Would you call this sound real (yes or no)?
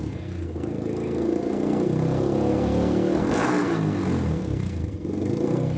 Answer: no